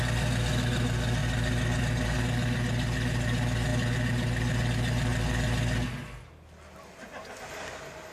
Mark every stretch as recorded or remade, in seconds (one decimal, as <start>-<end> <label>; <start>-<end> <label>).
0.0-8.1 recorded

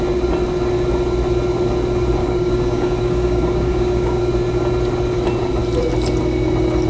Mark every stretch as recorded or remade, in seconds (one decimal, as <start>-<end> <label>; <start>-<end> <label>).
0.0-2.2 recorded; 2.2-4.2 remade; 4.2-6.9 recorded